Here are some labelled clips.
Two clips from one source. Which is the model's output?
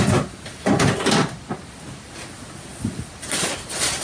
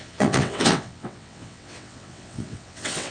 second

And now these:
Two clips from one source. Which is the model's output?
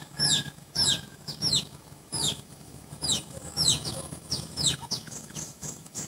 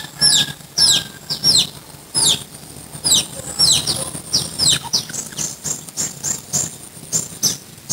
first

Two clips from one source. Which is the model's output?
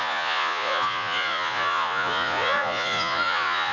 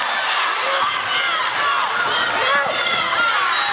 first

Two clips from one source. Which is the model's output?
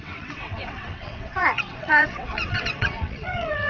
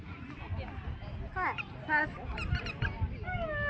first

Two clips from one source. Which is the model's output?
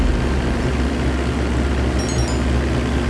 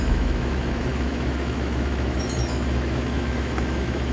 second